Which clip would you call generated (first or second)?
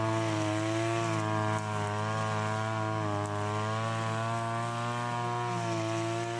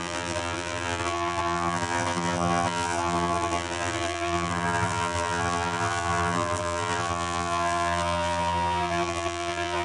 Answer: second